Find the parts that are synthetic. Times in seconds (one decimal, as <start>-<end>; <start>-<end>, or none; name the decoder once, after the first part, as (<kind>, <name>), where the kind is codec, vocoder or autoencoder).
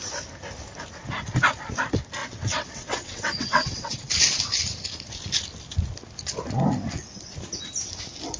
2.2-4.0 (vocoder, WaveNeXt)